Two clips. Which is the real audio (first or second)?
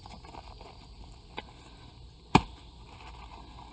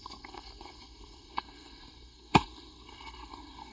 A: first